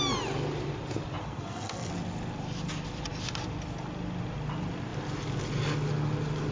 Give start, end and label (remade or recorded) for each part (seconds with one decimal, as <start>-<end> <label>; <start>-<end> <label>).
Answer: 0.0-1.2 recorded; 1.2-1.9 remade; 1.9-6.5 recorded

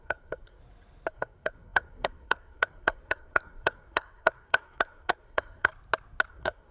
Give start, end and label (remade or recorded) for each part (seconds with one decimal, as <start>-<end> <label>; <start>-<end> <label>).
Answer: 0.0-0.6 remade; 0.6-1.1 recorded; 1.1-5.7 remade; 5.7-6.3 recorded; 6.3-6.7 remade

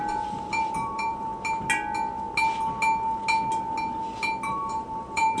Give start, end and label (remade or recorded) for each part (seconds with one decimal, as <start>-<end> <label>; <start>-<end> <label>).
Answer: 0.0-1.3 remade; 1.3-4.5 recorded; 4.5-5.4 remade

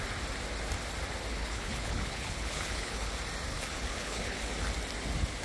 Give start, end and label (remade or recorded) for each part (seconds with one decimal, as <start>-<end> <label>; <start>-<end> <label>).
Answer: 0.0-1.3 recorded; 1.3-3.1 remade; 3.1-3.5 recorded; 3.5-4.4 remade; 4.4-5.4 recorded

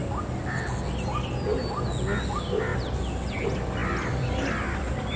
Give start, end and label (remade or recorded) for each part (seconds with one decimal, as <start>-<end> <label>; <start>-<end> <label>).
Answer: 0.0-0.9 recorded; 0.9-1.5 remade; 1.5-2.3 recorded; 2.3-2.7 remade; 2.7-3.3 recorded; 3.3-5.2 remade